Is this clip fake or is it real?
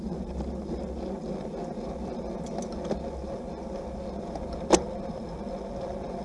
real